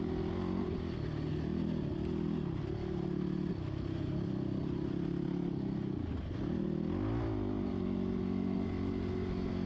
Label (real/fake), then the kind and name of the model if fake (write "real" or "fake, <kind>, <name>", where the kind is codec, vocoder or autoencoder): real